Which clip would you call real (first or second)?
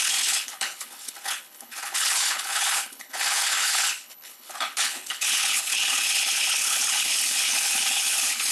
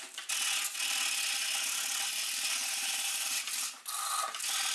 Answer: second